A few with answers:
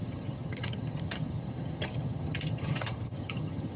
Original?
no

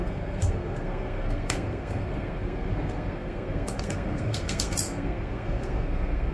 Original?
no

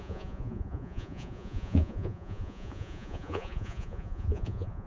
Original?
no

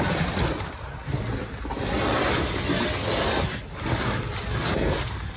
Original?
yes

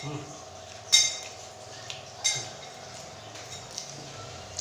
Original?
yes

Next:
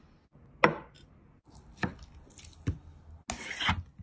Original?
yes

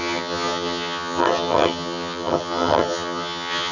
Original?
no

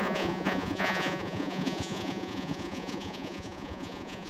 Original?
no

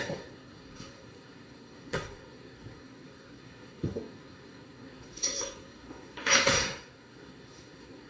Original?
no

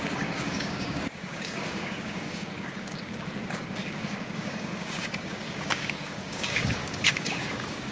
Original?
no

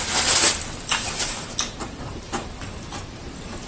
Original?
yes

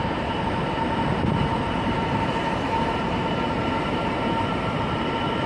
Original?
no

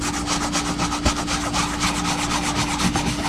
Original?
yes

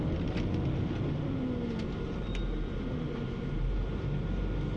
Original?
yes